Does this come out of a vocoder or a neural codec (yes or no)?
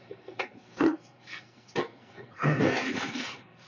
yes